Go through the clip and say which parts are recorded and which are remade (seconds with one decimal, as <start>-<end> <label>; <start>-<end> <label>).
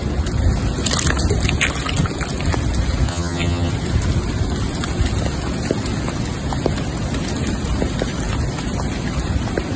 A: 0.0-3.1 recorded; 3.1-3.7 remade; 3.7-9.8 recorded